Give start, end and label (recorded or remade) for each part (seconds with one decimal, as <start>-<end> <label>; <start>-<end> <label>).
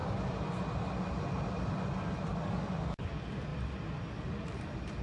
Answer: 0.0-2.3 recorded; 2.3-3.1 remade; 3.1-5.0 recorded